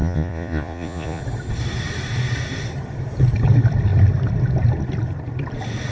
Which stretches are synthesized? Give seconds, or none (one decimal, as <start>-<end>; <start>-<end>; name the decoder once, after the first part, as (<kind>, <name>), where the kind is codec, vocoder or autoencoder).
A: 0.0-1.2 (vocoder, Vocos)